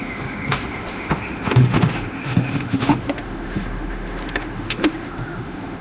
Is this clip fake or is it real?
fake